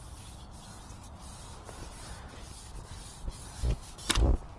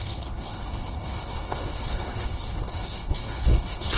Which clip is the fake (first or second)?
second